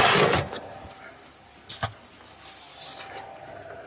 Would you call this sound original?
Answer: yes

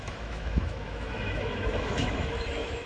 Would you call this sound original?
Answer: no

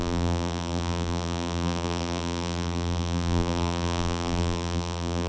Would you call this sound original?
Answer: no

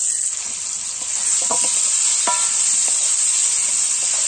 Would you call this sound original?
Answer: yes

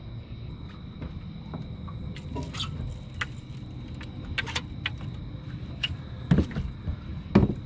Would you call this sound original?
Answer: yes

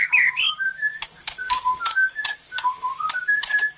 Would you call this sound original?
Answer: no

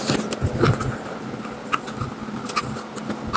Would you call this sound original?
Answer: yes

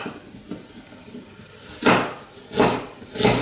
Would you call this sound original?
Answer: yes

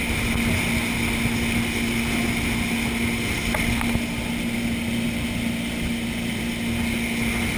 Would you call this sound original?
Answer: yes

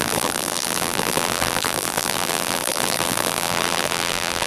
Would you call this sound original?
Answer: no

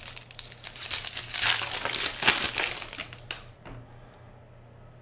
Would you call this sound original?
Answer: yes